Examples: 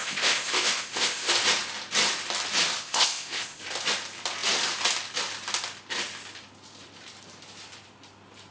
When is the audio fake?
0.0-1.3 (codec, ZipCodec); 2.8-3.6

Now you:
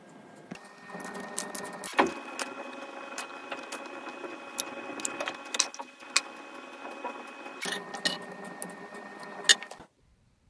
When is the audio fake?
none

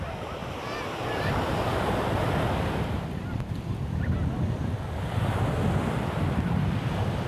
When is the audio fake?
none

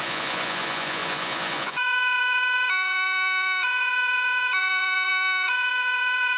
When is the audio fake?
0.0-6.4 (vocoder, Vocos)

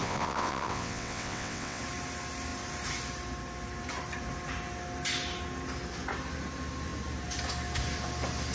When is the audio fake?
0.0-1.8 (vocoder, WaveNeXt)

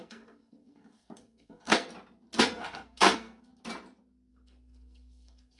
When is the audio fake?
0.0-1.9 (codec, SNAC); 2.4-3.5; 4.3-5.6

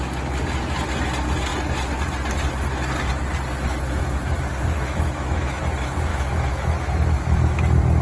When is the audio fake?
4.5-5.6 (autoencoder, DAC-VAE); 6.1-7.6